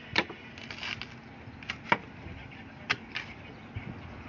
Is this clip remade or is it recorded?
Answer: recorded